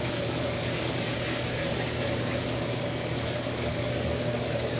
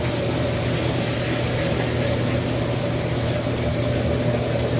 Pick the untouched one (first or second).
second